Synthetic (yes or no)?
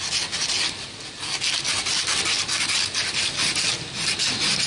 no